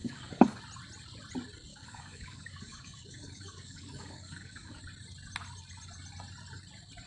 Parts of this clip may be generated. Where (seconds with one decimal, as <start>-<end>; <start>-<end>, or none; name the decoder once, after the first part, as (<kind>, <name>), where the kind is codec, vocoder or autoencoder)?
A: 0.0-0.6 (codec, DAC); 1.7-4.8